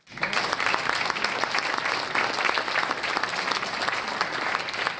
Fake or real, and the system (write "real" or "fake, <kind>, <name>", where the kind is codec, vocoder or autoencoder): real